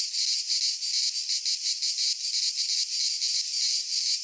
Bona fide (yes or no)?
yes